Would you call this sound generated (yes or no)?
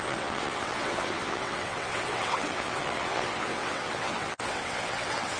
yes